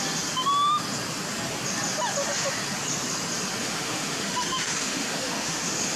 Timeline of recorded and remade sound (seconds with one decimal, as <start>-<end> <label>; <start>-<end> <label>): 0.0-3.6 recorded; 3.6-6.0 remade